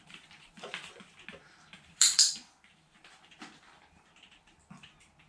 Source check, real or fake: fake